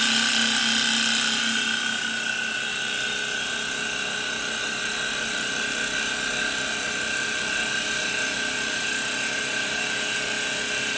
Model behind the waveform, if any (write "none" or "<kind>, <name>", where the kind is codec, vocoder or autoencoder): none